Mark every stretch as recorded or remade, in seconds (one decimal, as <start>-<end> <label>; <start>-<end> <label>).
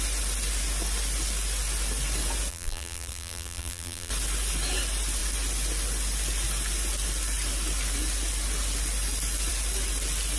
0.0-2.5 recorded; 2.5-4.1 remade; 4.1-10.4 recorded